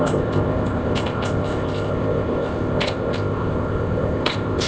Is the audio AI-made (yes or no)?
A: yes